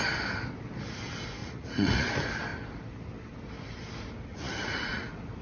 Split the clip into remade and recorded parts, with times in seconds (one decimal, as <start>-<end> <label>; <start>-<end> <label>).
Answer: 0.0-1.4 recorded; 1.4-2.1 remade; 2.1-4.3 recorded; 4.3-5.0 remade; 5.0-5.4 recorded